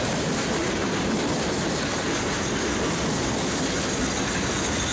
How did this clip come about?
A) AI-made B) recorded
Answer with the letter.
B